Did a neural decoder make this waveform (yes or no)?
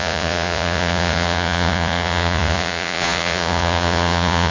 yes